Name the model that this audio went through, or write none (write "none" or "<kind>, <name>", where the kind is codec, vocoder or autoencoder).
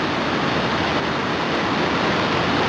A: none